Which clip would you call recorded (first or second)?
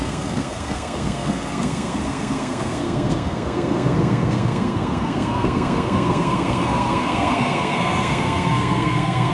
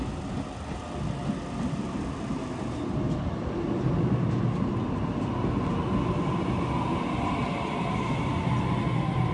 second